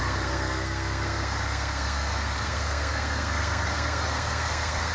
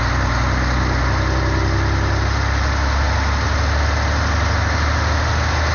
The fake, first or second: first